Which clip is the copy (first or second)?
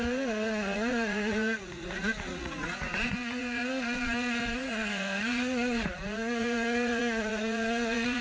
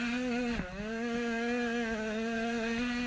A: first